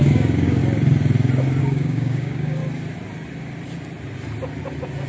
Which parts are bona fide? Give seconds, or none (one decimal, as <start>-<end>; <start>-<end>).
0.6-1.6; 2.6-5.1